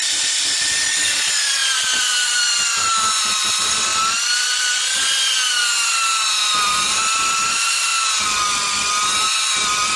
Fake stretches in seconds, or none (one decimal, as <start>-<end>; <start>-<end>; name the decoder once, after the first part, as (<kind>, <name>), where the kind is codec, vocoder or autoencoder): 0.0-5.5 (vocoder, BigVGAN v2); 6.3-7.9